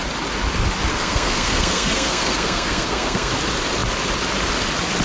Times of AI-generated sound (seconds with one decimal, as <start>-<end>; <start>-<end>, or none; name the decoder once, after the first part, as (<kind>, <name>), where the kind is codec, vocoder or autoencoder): 0.9-3.3 (codec, SNAC)